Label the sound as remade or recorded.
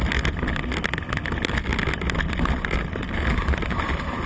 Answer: recorded